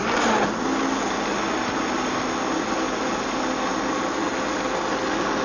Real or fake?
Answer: real